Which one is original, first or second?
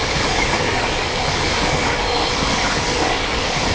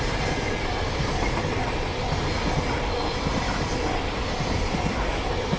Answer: second